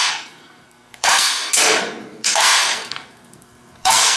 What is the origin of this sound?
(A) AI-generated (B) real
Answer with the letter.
A